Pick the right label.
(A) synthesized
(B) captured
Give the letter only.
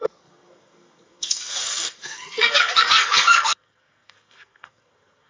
A